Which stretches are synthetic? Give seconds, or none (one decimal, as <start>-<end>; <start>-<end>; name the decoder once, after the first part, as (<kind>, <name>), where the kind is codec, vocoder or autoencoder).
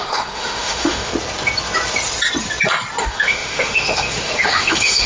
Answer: 0.0-1.1 (autoencoder, DAC-VAE); 3.0-5.1